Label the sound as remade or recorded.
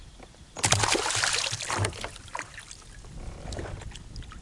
remade